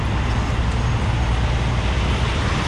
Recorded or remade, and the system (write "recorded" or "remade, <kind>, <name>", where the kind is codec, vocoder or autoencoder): recorded